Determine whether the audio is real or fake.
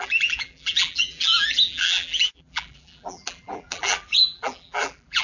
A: fake